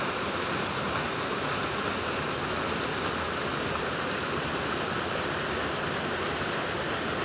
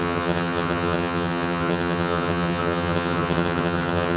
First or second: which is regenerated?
second